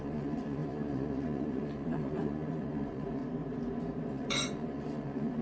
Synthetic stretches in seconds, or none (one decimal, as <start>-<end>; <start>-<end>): 0.0-3.2; 4.1-5.4